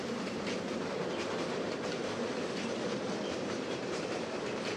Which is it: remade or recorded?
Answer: remade